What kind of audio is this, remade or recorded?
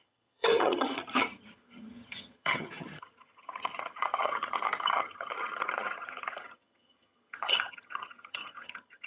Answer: remade